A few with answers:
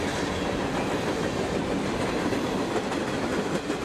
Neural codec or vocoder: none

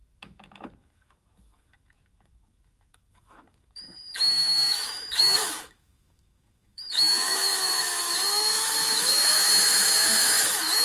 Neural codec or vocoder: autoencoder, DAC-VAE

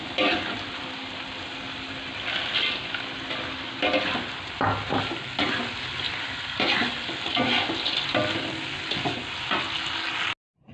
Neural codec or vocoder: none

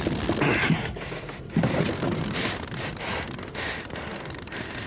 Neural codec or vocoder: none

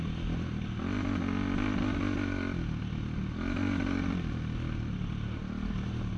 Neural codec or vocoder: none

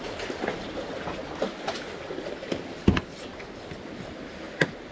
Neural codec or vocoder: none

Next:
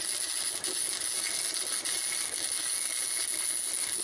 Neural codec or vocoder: none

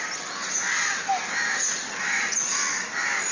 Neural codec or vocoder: none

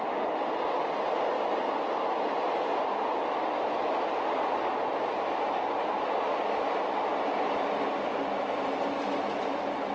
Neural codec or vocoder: none